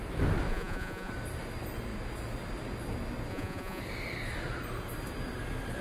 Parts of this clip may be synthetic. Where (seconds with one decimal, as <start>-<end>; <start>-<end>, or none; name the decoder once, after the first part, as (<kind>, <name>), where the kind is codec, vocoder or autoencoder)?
0.5-1.1 (vocoder, Vocos); 3.3-3.8